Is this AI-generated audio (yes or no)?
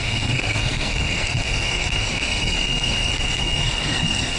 yes